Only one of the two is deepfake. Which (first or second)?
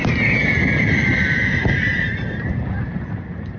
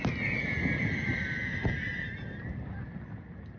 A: first